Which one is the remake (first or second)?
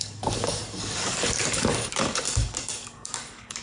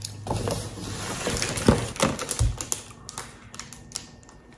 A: first